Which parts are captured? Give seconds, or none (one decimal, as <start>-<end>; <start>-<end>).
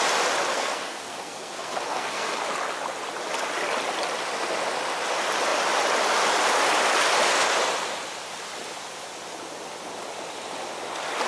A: 0.0-0.5; 2.4-11.3